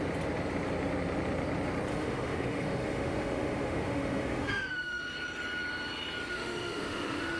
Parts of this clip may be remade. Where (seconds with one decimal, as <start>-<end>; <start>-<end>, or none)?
1.9-5.0; 6.3-7.4